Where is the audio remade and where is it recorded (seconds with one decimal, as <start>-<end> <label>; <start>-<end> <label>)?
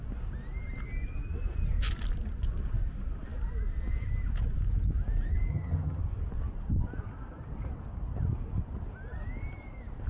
0.0-5.5 recorded; 5.5-6.0 remade; 6.0-10.1 recorded